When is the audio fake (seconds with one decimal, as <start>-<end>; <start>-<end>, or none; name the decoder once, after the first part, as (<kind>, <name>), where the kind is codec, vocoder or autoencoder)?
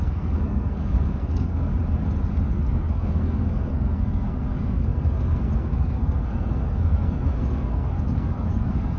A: 0.0-1.7 (codec, SNAC); 2.5-9.0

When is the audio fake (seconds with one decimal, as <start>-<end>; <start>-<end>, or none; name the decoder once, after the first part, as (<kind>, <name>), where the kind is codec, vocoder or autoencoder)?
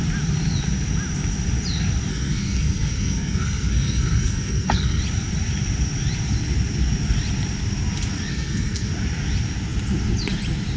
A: 2.1-5.0 (codec, SNAC); 8.3-8.9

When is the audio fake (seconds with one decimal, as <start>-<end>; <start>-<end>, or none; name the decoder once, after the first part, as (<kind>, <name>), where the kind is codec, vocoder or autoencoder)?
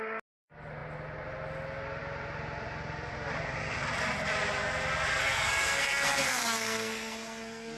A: 5.1-7.8 (codec, SNAC)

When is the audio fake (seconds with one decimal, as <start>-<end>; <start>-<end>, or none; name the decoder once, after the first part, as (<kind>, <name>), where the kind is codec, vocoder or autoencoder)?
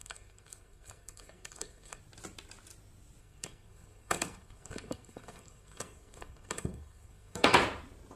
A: 0.0-2.0 (codec, SNAC); 3.2-7.6